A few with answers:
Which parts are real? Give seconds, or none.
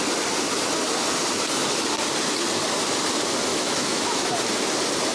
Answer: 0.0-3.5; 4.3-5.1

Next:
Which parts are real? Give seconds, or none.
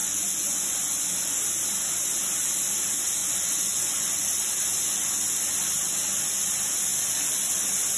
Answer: 1.4-3.2; 4.5-8.0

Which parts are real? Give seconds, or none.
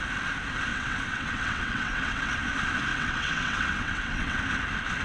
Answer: 0.0-0.7; 2.4-2.9; 4.4-5.0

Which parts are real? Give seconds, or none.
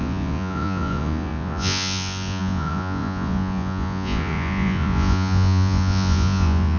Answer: none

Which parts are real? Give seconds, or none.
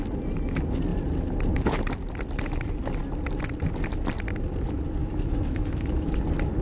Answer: 0.0-5.0; 6.1-6.6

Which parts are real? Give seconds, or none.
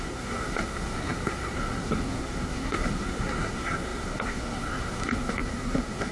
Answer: none